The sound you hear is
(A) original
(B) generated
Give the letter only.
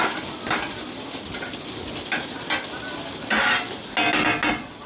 A